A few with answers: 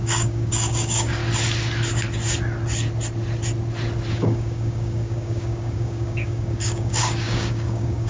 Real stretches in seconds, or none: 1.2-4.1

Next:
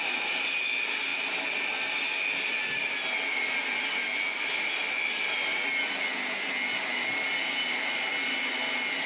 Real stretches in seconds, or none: 0.0-9.1

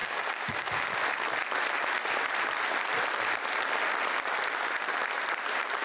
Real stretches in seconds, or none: 0.7-5.8

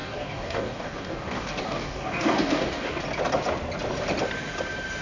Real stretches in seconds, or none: 3.0-5.0

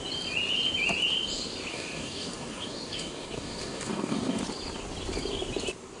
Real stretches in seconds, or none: 0.0-1.7; 4.4-6.0